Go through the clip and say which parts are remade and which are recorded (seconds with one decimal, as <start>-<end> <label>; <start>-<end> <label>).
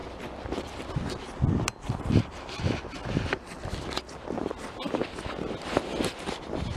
0.0-6.8 recorded